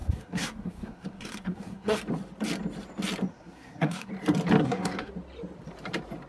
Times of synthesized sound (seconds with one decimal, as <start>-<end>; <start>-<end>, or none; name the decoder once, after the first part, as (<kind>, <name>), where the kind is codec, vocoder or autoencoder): 0.0-2.0 (codec, SNAC); 3.3-4.1; 4.6-5.1